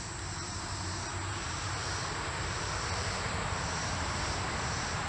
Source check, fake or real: fake